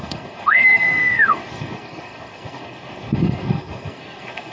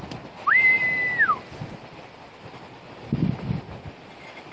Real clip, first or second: second